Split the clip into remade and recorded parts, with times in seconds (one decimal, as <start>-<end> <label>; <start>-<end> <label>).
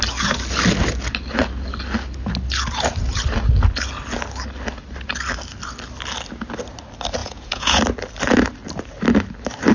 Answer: 0.0-7.2 recorded; 7.2-7.8 remade; 7.8-9.7 recorded